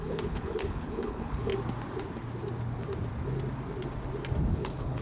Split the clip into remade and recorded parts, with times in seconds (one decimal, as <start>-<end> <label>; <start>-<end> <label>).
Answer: 0.0-1.5 remade; 1.5-4.5 recorded; 4.5-5.0 remade